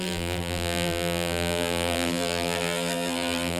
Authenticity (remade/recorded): remade